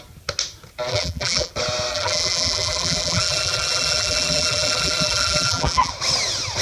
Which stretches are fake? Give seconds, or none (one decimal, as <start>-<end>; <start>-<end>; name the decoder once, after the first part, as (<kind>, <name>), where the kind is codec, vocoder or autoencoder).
0.9-1.5 (vocoder, BigVGAN v2); 1.9-5.9